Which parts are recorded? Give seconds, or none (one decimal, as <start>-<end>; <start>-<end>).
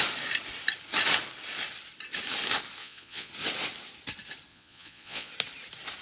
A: 0.0-2.8; 3.3-4.5; 5.3-6.0